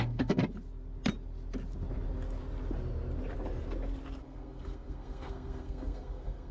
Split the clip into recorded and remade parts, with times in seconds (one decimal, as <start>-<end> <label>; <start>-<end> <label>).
0.0-0.4 remade; 0.4-4.2 recorded; 4.2-6.5 remade